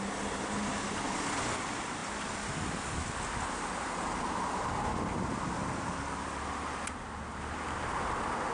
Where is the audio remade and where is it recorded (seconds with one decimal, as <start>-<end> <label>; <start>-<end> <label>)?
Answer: 0.0-8.5 recorded